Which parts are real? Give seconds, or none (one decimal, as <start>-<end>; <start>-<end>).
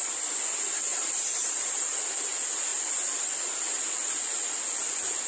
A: 0.0-0.9; 2.0-2.7; 3.4-5.3